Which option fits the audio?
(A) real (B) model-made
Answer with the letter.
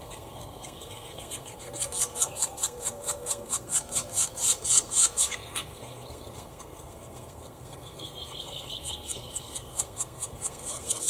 B